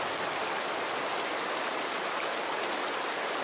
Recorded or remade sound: recorded